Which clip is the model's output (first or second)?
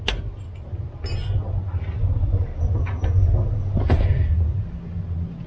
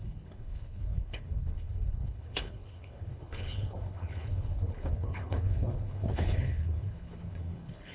second